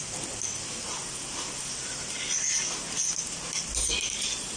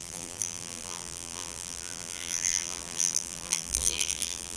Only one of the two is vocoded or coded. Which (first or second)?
second